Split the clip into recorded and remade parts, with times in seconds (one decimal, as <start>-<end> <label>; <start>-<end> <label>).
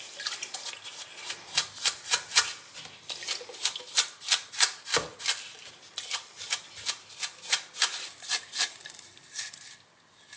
0.0-8.3 recorded; 8.3-9.3 remade; 9.3-10.4 recorded